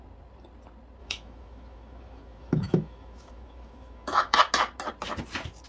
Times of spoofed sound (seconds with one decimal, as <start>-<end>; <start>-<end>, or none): 1.0-4.4